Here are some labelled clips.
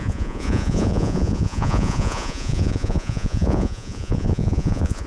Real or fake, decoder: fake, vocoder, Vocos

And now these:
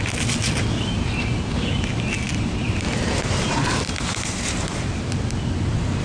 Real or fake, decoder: real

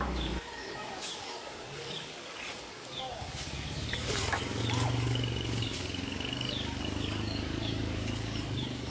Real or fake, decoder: fake, codec, DAC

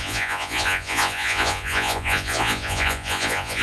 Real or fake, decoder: fake, vocoder, Vocos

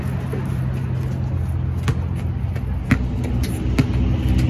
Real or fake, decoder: real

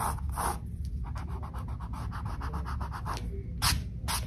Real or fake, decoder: real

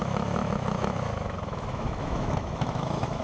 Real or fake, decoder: fake, autoencoder, DAC-VAE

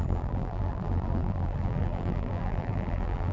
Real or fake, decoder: fake, vocoder, BigVGAN v2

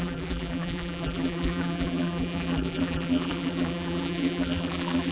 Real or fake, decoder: fake, vocoder, BigVGAN v2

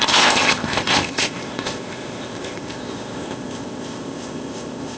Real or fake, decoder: fake, codec, ZipCodec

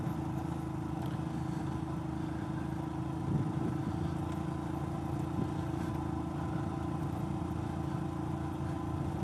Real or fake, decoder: real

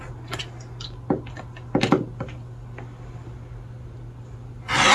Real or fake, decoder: real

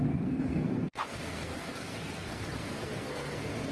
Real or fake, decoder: fake, codec, SNAC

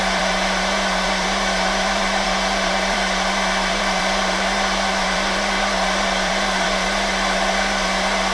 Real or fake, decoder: fake, vocoder, BigVGAN v2